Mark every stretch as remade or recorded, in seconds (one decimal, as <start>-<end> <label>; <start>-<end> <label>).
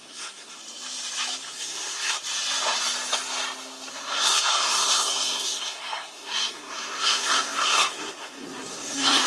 0.0-0.6 remade; 0.6-1.5 recorded; 1.5-2.2 remade; 2.2-3.9 recorded; 3.9-9.3 remade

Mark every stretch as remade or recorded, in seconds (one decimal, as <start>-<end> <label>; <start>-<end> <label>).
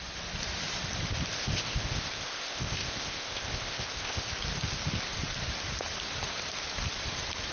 0.0-1.3 recorded; 1.3-4.3 remade; 4.3-7.5 recorded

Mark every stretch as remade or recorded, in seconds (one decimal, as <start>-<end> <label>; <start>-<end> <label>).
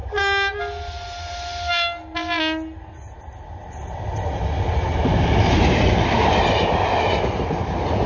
0.0-8.1 recorded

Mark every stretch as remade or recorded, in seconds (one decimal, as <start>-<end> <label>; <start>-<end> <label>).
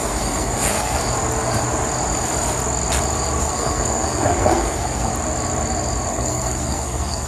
0.0-1.0 remade; 1.0-3.4 recorded; 3.4-5.1 remade; 5.1-6.1 recorded; 6.1-7.3 remade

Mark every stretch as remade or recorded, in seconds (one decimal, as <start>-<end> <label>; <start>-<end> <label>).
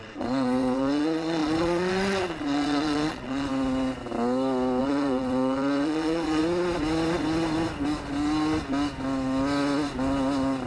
0.0-3.5 remade; 3.5-4.8 recorded; 4.8-6.4 remade; 6.4-10.7 recorded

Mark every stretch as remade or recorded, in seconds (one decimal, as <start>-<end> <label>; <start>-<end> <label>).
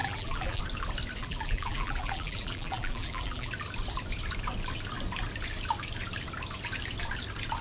0.0-0.6 remade; 0.6-1.2 recorded; 1.2-3.5 remade; 3.5-7.6 recorded